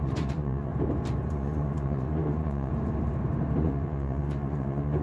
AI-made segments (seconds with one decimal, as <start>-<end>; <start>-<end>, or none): 0.0-0.7; 1.3-2.7; 3.6-5.0